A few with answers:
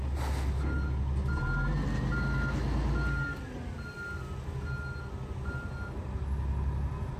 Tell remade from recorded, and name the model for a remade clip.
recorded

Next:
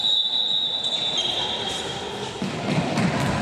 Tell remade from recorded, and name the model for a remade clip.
recorded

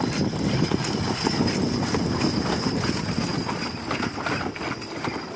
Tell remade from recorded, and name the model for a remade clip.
recorded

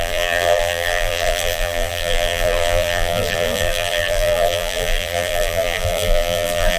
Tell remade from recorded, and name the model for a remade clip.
remade, vocoder, BigVGAN v2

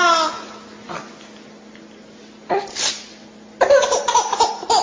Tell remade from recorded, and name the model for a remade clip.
recorded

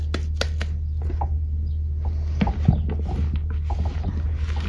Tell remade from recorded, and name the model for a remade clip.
recorded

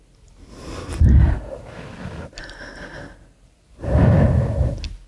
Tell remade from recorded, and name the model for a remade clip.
recorded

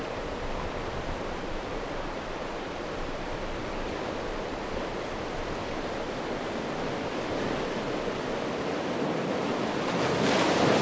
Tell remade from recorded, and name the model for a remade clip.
recorded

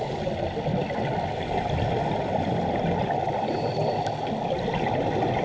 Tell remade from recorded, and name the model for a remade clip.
recorded